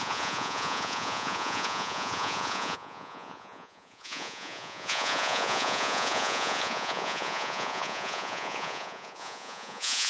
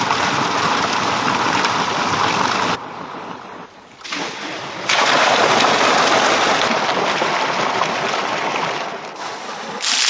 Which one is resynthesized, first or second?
first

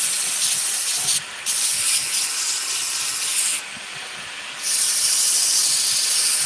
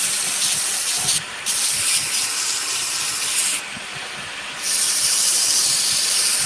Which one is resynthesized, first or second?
second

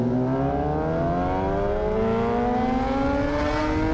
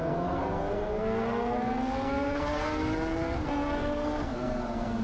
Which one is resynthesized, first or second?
second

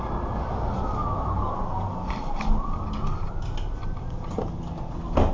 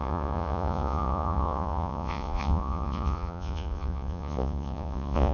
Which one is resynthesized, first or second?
second